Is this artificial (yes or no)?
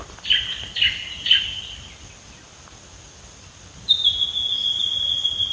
no